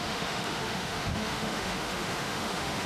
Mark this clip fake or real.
fake